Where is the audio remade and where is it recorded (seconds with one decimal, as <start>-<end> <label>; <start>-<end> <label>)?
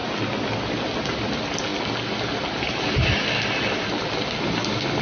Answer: 0.0-5.0 recorded